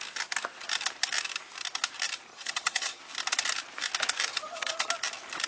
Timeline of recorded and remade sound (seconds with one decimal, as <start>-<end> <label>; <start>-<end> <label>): 0.0-2.3 recorded; 2.3-3.0 remade; 3.0-4.3 recorded; 4.3-4.9 remade; 4.9-5.5 recorded